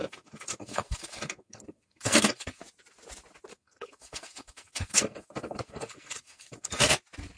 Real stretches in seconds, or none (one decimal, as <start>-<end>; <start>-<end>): 2.6-3.5; 6.9-7.4